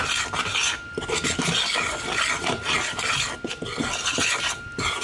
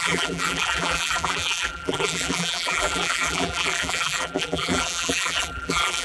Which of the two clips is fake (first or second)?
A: second